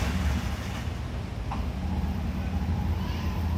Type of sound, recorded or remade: recorded